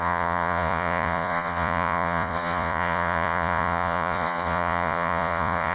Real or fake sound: fake